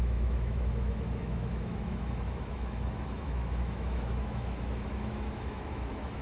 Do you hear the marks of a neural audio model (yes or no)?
yes